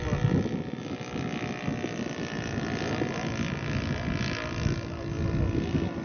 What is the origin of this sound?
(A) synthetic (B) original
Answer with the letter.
B